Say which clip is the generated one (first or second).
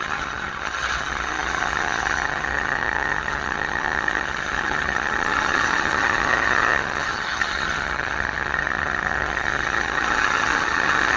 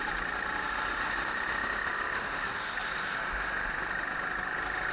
first